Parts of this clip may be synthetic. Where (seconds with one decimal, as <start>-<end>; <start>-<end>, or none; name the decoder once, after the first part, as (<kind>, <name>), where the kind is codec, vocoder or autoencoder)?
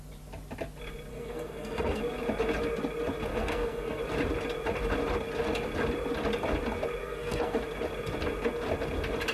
1.1-2.0 (codec, SNAC); 3.3-4.0; 7.0-7.6